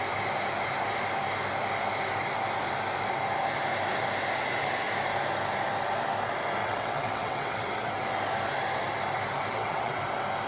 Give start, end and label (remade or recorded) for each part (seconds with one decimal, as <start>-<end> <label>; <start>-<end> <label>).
0.0-6.6 recorded; 6.6-7.9 remade; 7.9-9.5 recorded; 9.5-10.0 remade; 10.0-10.5 recorded